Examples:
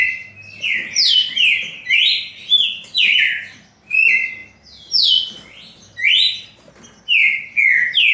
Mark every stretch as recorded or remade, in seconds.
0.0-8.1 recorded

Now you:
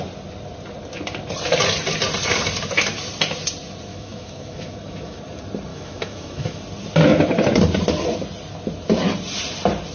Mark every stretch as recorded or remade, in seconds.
0.0-3.9 recorded; 3.9-5.2 remade; 5.2-5.7 recorded; 5.7-6.6 remade; 6.6-9.9 recorded